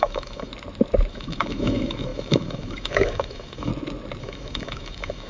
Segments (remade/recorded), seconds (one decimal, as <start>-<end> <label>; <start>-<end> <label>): 0.0-0.5 remade; 0.5-1.1 recorded; 1.1-3.7 remade; 3.7-4.2 recorded; 4.2-5.3 remade